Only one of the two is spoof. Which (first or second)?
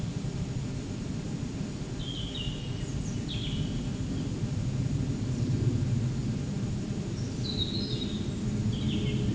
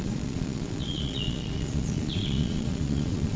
second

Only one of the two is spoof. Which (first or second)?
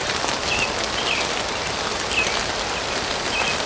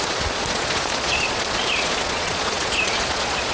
second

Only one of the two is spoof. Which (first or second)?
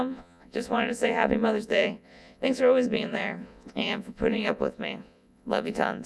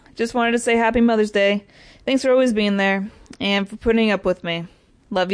first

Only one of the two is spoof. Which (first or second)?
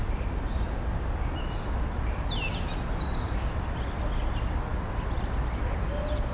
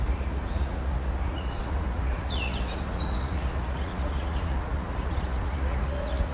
second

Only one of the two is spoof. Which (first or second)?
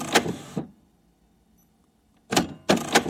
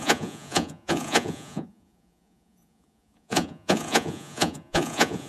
second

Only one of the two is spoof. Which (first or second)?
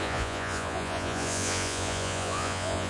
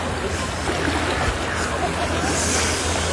first